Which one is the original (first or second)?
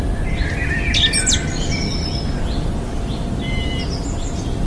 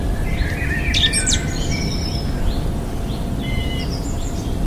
first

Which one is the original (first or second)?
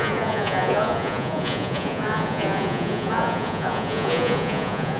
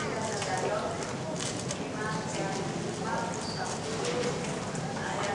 second